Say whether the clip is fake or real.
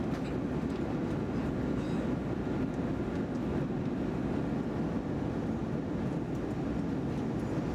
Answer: real